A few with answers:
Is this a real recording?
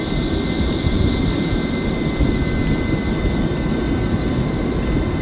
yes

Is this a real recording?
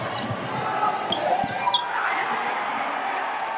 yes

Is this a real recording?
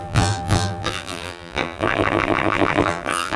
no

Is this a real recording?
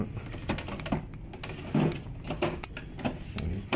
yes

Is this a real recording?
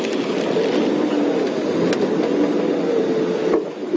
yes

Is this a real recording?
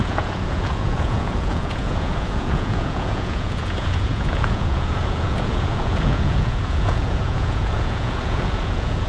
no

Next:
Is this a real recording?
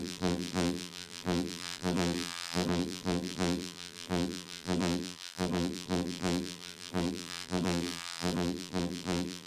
no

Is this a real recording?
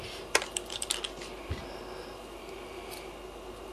yes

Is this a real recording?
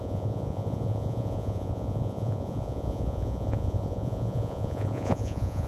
no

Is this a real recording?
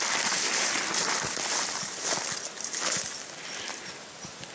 yes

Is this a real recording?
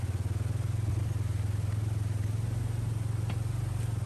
yes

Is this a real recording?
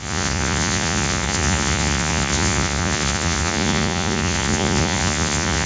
no